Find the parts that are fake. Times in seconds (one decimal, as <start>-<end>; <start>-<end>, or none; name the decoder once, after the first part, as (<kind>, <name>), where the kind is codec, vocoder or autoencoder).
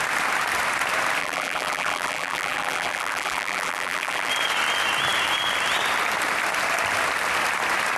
1.2-4.3 (vocoder, BigVGAN v2)